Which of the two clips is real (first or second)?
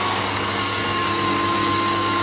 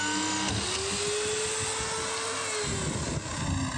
second